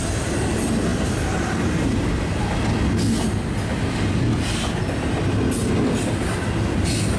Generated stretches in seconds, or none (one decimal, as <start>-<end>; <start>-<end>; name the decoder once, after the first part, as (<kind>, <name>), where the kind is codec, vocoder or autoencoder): none